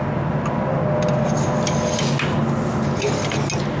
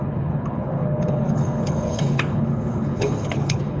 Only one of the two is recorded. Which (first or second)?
first